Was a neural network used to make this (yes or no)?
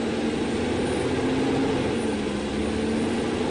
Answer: no